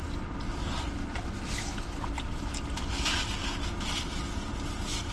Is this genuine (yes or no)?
yes